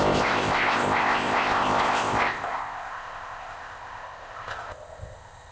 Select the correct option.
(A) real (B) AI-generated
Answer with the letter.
B